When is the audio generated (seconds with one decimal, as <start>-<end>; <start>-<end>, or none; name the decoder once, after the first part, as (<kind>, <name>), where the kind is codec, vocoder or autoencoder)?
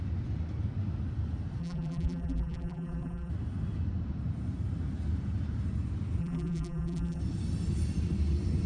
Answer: 1.6-3.3 (vocoder, BigVGAN v2); 6.2-7.2